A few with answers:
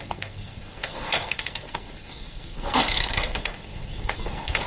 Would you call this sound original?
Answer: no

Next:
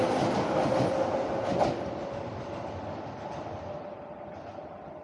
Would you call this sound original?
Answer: yes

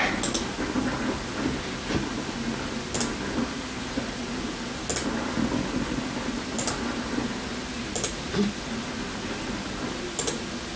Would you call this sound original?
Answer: yes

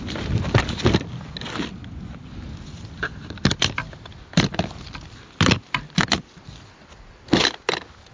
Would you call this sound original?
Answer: yes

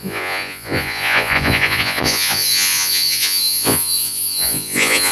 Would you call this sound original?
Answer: no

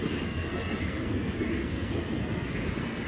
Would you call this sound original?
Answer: no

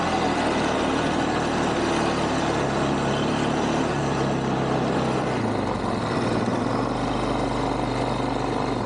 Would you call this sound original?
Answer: yes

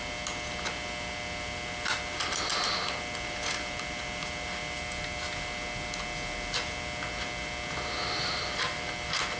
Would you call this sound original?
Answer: yes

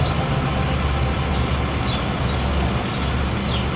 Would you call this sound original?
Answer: yes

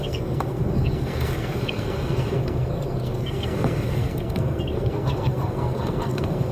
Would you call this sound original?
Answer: no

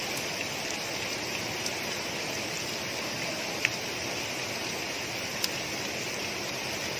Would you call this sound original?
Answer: yes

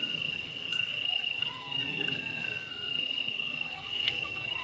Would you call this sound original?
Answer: no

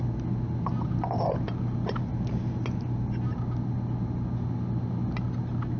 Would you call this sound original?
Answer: yes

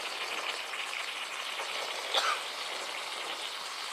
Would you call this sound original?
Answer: yes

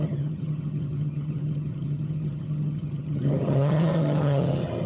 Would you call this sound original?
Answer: no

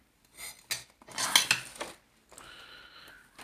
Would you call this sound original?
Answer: yes